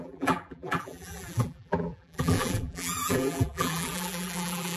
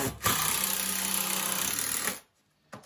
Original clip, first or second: second